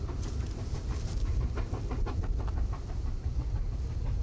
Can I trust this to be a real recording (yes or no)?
no